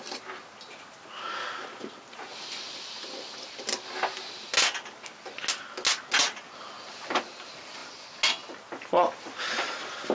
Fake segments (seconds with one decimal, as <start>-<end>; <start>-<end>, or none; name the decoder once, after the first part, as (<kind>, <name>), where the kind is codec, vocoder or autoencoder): none